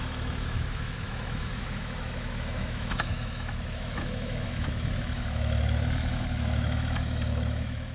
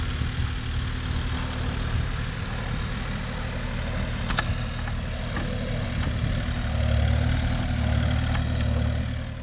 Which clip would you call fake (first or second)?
first